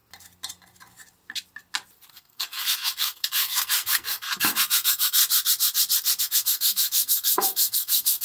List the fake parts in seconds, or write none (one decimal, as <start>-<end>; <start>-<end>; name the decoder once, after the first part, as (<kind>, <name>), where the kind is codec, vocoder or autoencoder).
2.1-5.2 (codec, SNAC); 6.2-8.2